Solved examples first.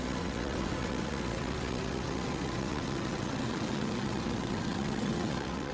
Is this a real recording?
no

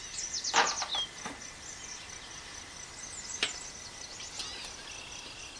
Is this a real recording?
yes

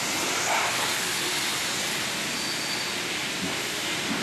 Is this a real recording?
yes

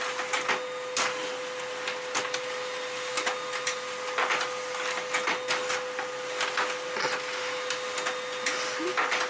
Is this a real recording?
yes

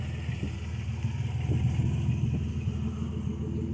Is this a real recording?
yes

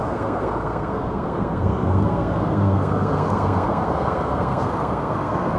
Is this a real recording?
no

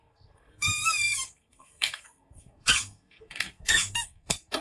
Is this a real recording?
no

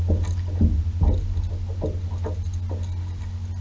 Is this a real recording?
yes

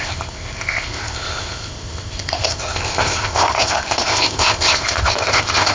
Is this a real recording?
no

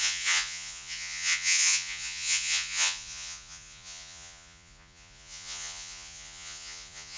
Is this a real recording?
no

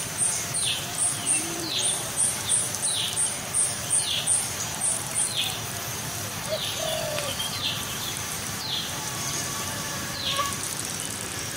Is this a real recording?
no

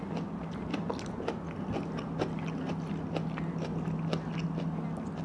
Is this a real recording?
yes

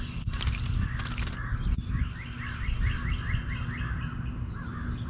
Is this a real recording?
yes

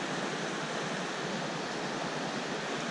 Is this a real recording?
yes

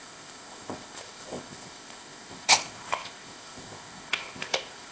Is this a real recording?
no